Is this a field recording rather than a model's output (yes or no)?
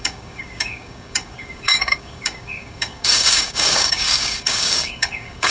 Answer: no